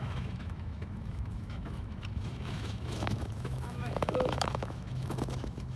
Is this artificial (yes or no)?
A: yes